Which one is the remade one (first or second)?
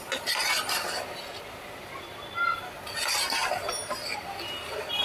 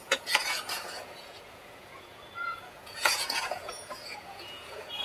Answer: second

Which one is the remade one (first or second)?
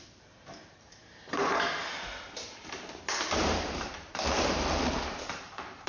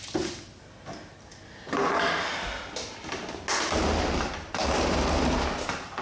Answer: first